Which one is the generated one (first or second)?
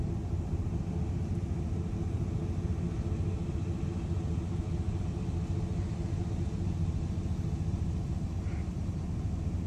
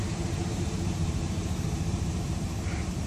second